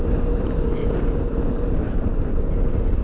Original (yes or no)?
no